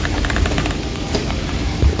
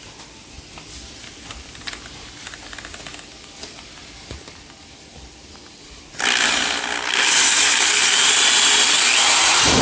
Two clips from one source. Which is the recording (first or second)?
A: second